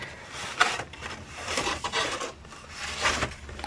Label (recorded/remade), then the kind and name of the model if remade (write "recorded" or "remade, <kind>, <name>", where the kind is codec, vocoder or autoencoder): remade, vocoder, BigVGAN v2